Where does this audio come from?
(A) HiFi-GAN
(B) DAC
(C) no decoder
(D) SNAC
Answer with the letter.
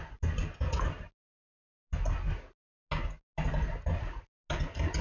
C